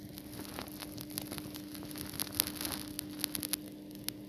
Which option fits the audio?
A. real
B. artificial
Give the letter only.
A